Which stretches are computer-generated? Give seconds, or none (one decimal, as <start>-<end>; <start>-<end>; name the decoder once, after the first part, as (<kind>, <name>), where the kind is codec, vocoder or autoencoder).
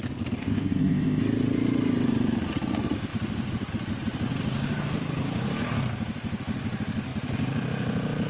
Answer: 0.4-1.2 (codec, ZipCodec)